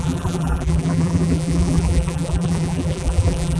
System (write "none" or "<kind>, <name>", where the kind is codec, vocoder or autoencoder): vocoder, BigVGAN v2